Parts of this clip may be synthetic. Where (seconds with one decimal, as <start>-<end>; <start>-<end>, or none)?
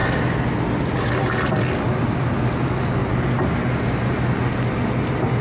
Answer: none